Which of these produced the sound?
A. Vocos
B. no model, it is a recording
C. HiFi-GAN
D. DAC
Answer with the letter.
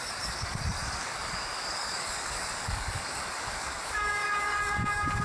D